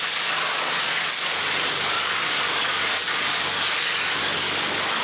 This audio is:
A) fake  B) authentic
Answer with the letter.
A